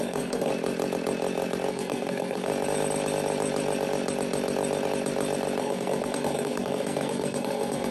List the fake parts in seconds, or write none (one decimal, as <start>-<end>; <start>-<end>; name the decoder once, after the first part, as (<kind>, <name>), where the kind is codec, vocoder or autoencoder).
0.0-0.5 (codec, SNAC); 1.7-2.5; 5.6-7.9